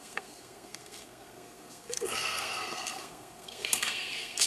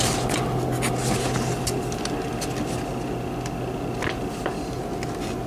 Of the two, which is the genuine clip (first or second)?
second